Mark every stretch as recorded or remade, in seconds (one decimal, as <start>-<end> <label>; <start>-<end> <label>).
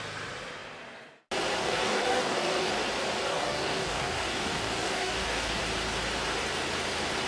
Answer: 0.0-1.6 recorded; 1.6-2.7 remade; 2.7-3.3 recorded; 3.3-5.6 remade; 5.6-7.3 recorded